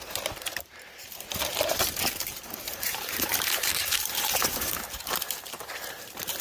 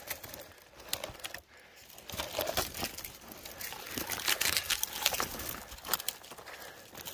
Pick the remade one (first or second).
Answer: first